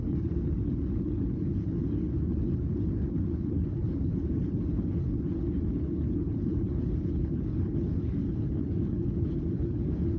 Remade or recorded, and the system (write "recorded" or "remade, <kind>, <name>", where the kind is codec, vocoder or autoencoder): remade, codec, HILCodec